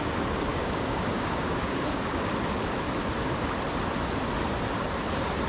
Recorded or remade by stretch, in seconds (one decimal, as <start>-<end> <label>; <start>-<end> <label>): 0.0-0.5 recorded; 0.5-2.3 remade; 2.3-5.5 recorded

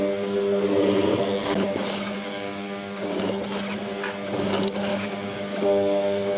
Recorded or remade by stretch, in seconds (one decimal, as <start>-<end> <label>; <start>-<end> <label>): 0.0-1.4 recorded; 1.4-3.2 remade; 3.2-4.9 recorded; 4.9-6.4 remade